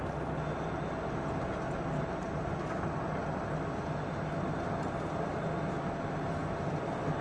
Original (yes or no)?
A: yes